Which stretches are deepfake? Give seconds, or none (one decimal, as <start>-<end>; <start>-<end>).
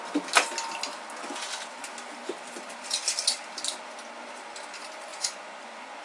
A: 5.1-6.0